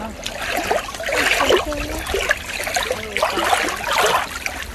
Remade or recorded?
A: recorded